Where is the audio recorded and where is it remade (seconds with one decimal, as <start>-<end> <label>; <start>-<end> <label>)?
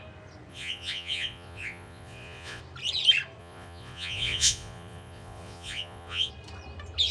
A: 0.0-0.5 recorded; 0.5-2.6 remade; 2.6-3.4 recorded; 3.4-6.3 remade; 6.3-7.1 recorded